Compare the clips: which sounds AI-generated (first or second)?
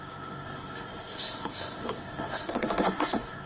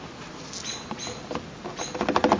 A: first